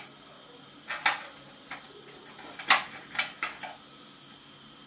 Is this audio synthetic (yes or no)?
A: no